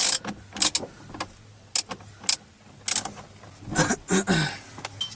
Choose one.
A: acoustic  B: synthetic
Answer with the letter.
A